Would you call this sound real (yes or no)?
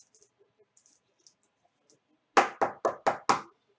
yes